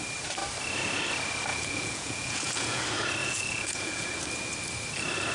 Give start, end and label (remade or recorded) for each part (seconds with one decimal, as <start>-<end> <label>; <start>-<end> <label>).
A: 0.0-1.5 recorded; 1.5-2.8 remade; 2.8-3.2 recorded; 3.2-4.2 remade; 4.2-5.3 recorded